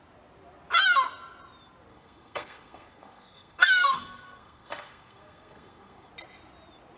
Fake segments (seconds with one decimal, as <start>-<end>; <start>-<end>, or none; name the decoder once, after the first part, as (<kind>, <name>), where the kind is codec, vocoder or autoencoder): 1.9-6.1 (codec, SNAC)